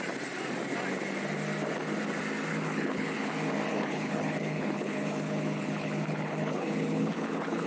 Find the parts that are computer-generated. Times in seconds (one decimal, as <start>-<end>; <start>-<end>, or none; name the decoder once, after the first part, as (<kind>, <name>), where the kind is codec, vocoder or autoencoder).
2.5-3.3 (codec, HILCodec); 3.7-7.7